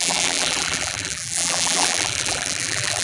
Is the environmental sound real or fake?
fake